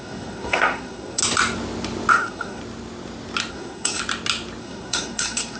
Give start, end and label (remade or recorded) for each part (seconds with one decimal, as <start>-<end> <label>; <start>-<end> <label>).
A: 0.0-1.2 remade; 1.2-2.1 recorded; 2.1-2.6 remade; 2.6-3.5 recorded; 3.5-4.0 remade; 4.0-4.6 recorded; 4.6-5.6 remade